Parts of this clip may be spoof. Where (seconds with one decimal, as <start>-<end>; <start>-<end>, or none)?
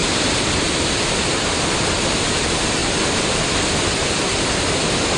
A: 0.0-2.4; 2.8-4.6